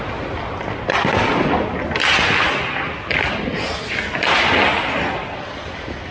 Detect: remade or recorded recorded